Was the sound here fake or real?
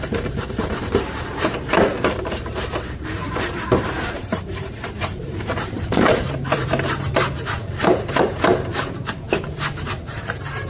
fake